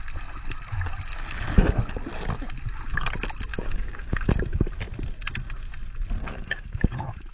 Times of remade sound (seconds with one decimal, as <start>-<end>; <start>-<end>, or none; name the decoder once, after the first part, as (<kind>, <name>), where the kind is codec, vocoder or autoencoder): 3.5-4.3 (codec, DAC); 6.2-7.3